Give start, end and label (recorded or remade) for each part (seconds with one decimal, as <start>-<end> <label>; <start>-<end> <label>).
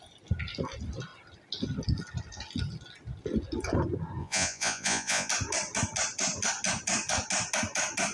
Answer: 0.0-4.2 recorded; 4.2-5.3 remade; 5.3-8.1 recorded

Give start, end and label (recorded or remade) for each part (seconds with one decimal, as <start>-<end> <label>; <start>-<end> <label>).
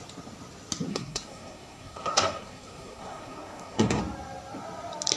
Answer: 0.0-0.9 recorded; 0.9-4.0 remade; 4.0-5.2 recorded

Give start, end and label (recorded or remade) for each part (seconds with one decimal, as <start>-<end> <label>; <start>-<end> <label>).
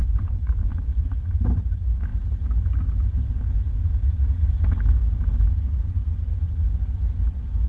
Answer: 0.0-0.6 remade; 0.6-7.7 recorded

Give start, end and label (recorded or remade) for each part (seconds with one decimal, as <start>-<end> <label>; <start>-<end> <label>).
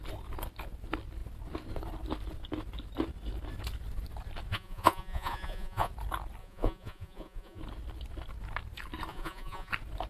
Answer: 0.0-4.5 recorded; 4.5-5.9 remade; 5.9-6.4 recorded; 6.4-7.6 remade; 7.6-9.1 recorded; 9.1-9.7 remade; 9.7-10.1 recorded